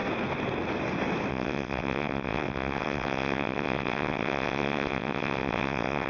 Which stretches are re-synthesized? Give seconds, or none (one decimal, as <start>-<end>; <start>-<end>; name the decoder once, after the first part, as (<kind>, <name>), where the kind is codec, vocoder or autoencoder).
1.3-6.1 (vocoder, WaveNeXt)